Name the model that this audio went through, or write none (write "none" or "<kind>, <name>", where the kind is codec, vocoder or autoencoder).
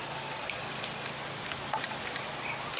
none